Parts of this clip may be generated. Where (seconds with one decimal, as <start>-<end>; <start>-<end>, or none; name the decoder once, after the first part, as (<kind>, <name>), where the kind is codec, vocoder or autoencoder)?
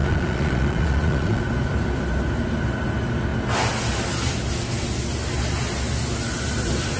0.0-1.4 (vocoder, Vocos)